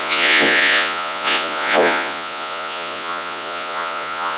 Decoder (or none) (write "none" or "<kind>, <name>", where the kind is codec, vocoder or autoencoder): vocoder, Vocos